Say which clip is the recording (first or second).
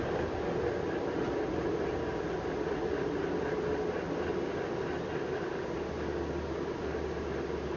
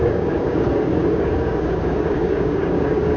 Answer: first